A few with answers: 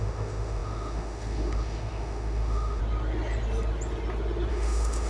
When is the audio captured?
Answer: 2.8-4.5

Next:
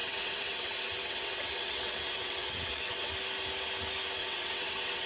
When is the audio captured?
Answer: 3.1-4.2

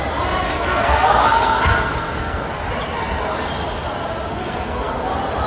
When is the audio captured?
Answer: 0.0-0.5; 2.4-4.3; 4.9-5.5

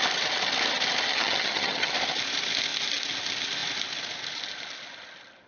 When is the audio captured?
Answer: 0.0-1.1; 1.9-5.5

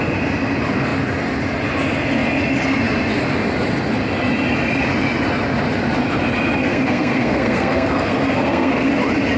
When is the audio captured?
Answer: 0.0-6.6; 8.9-9.4

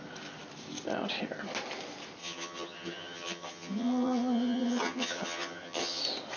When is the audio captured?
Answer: 0.0-2.2; 6.0-6.4

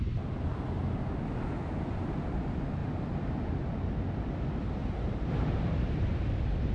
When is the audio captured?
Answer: 0.0-2.8; 3.7-4.8; 6.2-6.7